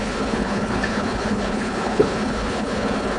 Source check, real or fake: fake